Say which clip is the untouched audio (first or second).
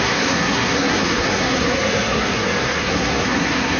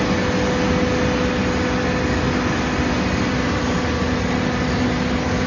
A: second